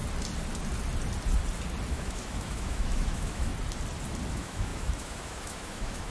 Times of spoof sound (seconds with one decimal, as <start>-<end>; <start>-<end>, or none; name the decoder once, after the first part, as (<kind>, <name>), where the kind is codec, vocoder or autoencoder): 1.9-3.5 (autoencoder, DAC-VAE); 4.3-6.1